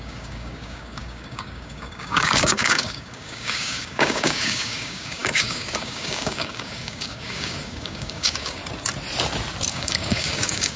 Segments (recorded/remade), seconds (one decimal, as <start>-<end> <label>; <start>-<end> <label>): 0.0-8.6 remade; 8.6-9.7 recorded; 9.7-10.8 remade